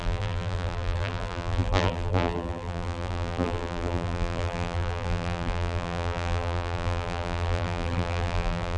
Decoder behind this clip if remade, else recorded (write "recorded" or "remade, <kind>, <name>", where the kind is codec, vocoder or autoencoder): remade, vocoder, BigVGAN v2